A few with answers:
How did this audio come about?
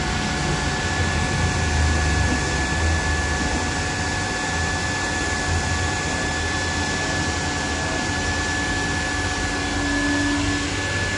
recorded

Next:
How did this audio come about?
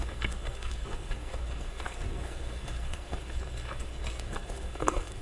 remade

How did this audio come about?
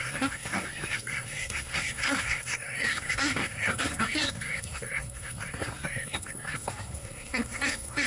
remade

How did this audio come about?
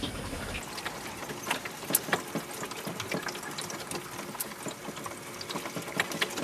recorded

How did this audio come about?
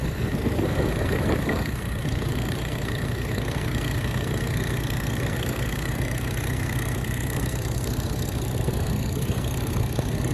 remade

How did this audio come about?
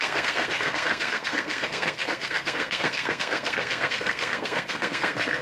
remade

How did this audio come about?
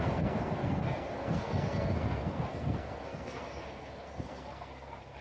remade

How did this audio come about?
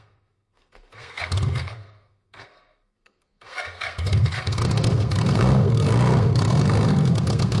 remade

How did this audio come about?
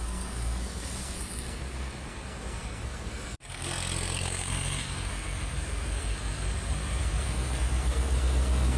remade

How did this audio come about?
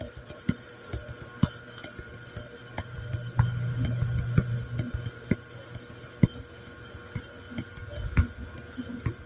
recorded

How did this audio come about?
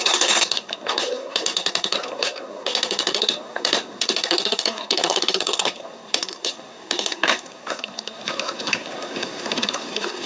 remade